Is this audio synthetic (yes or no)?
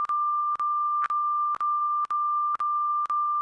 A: no